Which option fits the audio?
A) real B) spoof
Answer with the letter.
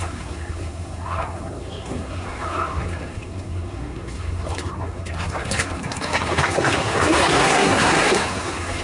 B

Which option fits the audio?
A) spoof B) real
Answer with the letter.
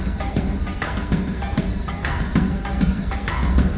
A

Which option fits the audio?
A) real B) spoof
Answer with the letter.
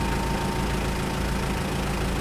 A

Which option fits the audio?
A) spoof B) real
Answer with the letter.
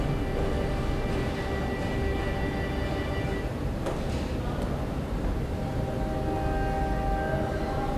B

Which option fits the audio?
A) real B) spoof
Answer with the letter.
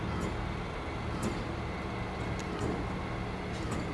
A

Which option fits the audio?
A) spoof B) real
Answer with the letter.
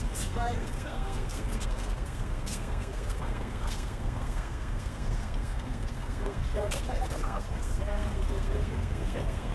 A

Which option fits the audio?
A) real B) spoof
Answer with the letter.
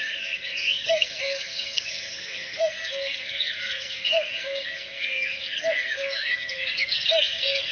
B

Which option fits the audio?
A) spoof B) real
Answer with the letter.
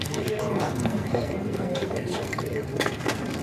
A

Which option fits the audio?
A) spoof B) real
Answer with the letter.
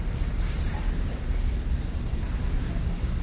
B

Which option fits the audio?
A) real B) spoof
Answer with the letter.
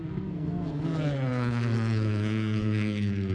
B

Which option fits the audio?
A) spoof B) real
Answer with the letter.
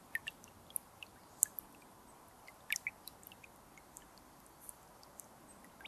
B